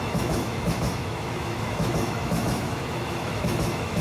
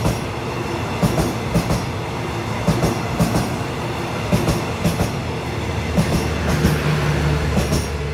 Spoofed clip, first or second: first